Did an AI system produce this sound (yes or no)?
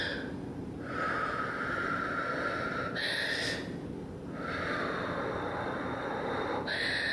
no